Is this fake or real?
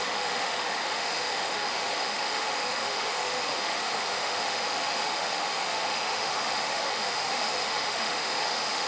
fake